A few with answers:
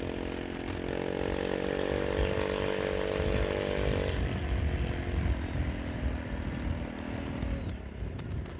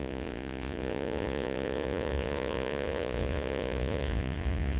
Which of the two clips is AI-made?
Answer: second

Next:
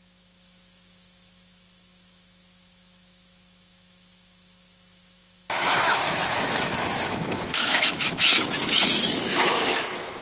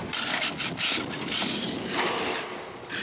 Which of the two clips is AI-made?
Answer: first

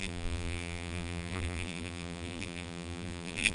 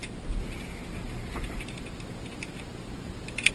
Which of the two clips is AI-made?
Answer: first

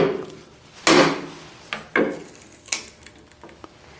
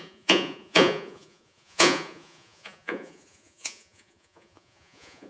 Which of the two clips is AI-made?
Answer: second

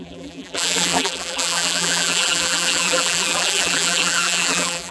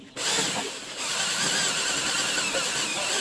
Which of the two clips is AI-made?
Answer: first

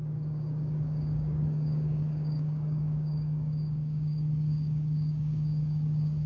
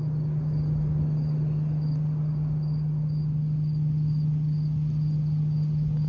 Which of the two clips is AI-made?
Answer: first